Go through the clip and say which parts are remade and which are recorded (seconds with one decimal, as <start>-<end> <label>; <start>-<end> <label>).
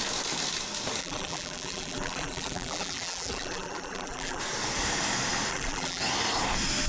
0.0-1.0 recorded; 1.0-4.4 remade; 4.4-5.5 recorded; 5.5-6.0 remade; 6.0-6.9 recorded